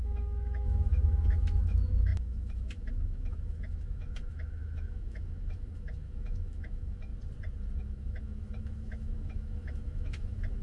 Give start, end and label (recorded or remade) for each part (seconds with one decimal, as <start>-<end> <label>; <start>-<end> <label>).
0.0-7.1 remade; 7.1-7.8 recorded; 7.8-10.6 remade